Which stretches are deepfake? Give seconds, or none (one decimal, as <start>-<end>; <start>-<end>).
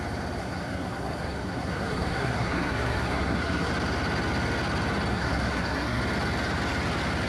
0.4-3.7; 5.1-6.0